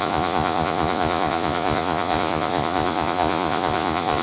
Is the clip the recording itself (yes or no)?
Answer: no